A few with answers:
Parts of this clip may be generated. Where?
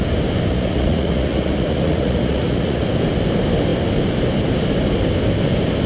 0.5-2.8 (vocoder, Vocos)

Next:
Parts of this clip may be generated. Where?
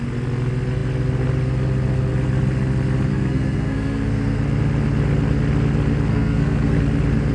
3.1-4.4 (codec, SNAC); 6.1-6.8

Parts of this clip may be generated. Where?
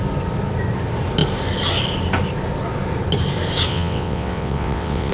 3.7-5.1 (vocoder, WaveNeXt)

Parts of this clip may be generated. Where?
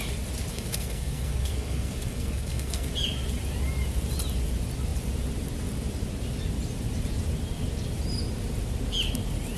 0.5-2.9 (codec, SNAC)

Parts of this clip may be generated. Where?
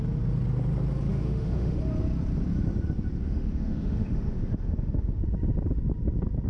1.1-1.8 (autoencoder, DAC-VAE); 3.2-5.2